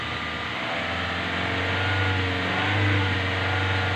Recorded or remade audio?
recorded